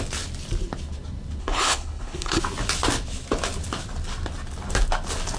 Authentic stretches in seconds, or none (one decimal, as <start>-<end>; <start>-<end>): 0.0-1.4; 2.4-5.4